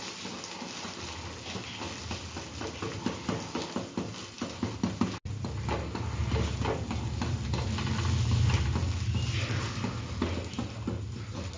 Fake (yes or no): no